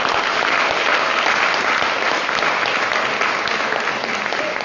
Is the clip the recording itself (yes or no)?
yes